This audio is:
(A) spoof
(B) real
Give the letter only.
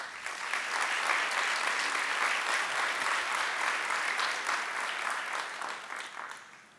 B